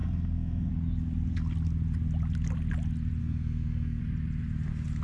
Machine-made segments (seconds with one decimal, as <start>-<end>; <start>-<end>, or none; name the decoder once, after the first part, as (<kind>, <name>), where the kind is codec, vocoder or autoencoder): 0.0-0.7 (codec, SNAC); 3.2-4.0

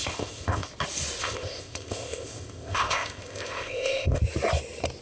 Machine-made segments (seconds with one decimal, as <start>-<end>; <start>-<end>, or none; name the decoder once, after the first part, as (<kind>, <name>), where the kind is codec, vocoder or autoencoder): 0.0-0.7 (codec, ZipCodec); 1.2-4.2

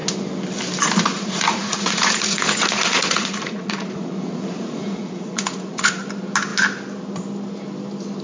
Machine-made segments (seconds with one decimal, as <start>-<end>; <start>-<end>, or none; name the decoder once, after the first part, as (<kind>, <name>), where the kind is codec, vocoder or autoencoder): 1.1-6.0 (vocoder, Vocos)

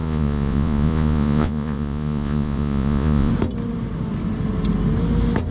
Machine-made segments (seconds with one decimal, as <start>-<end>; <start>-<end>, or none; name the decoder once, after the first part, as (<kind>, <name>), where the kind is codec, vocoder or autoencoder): 0.0-3.3 (vocoder, Vocos)

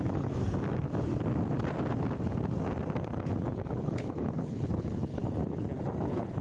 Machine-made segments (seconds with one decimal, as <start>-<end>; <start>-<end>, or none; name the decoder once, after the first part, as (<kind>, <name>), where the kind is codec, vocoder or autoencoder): 0.0-0.4 (codec, HILCodec); 3.6-5.2; 6.0-6.4

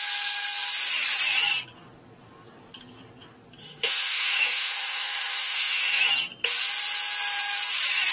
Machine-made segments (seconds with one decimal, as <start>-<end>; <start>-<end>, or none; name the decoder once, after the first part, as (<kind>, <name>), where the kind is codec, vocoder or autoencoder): 3.6-6.0 (autoencoder, DAC-VAE)

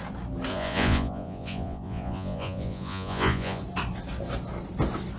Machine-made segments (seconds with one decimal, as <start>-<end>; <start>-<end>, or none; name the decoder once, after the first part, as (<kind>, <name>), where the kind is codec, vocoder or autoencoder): 0.5-3.6 (vocoder, Vocos)